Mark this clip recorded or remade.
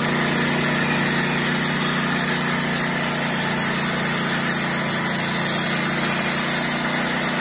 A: recorded